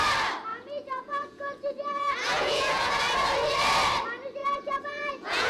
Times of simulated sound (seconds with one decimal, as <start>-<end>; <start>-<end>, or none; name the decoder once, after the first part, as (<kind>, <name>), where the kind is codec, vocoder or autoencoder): 0.5-3.0 (vocoder, Vocos); 4.4-5.5